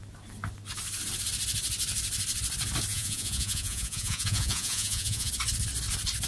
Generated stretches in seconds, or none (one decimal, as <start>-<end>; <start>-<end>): 2.9-5.3

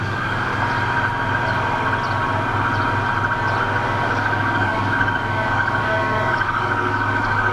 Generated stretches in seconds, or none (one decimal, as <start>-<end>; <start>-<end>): 0.0-0.5; 4.0-7.5

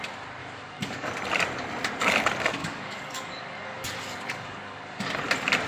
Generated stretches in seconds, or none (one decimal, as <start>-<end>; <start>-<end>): 0.4-1.1; 2.6-5.0